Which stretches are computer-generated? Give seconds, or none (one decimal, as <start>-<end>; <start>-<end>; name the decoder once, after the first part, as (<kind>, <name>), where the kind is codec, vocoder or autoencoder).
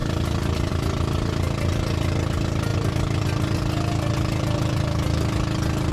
none